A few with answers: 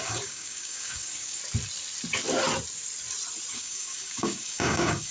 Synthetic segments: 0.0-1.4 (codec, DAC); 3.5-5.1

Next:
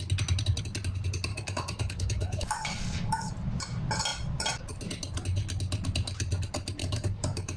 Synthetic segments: 1.3-3.3 (codec, DAC); 6.8-7.6

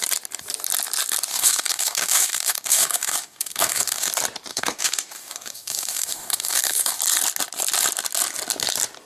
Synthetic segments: 1.3-4.1 (codec, DAC); 4.5-7.0

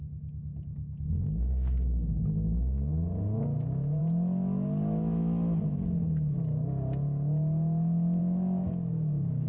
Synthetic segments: 0.0-4.0 (codec, DAC); 8.2-9.5

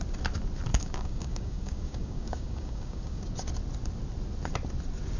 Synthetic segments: 0.7-3.3 (codec, DAC)

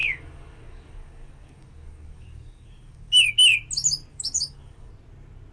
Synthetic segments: 0.0-3.3 (codec, DAC); 4.1-4.9